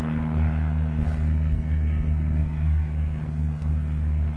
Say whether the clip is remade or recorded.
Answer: remade